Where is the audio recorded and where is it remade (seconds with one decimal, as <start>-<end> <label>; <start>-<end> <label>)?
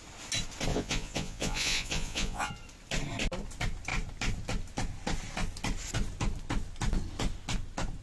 0.0-0.7 recorded; 0.7-2.5 remade; 2.5-8.0 recorded